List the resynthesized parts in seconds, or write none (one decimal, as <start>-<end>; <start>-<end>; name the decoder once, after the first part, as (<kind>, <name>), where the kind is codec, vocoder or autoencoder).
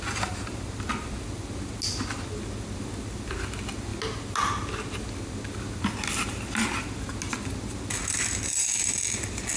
none